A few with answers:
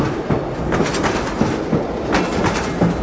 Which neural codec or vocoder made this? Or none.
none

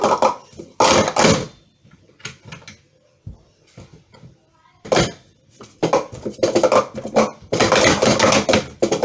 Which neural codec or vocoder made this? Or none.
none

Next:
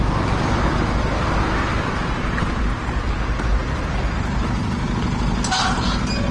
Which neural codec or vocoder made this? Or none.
none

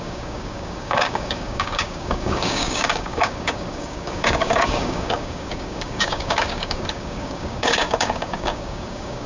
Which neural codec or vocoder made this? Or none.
codec, DAC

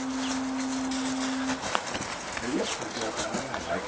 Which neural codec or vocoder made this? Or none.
none